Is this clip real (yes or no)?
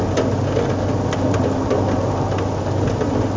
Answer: yes